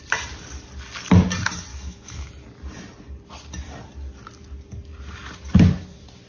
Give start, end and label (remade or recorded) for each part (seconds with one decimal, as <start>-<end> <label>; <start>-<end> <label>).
0.0-1.7 recorded; 1.7-2.3 remade; 2.3-6.3 recorded